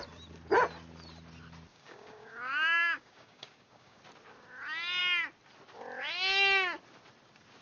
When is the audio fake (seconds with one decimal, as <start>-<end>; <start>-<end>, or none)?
1.7-4.0